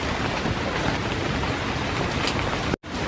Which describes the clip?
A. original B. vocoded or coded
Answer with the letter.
A